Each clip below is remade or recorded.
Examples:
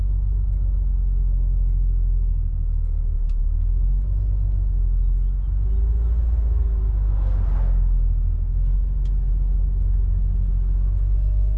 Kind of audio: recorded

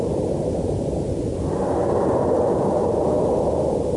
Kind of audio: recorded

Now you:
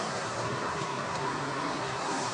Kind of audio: remade